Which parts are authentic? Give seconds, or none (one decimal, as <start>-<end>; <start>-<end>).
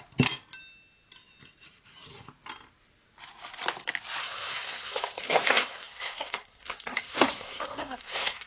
0.0-4.2